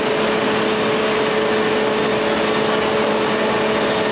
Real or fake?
real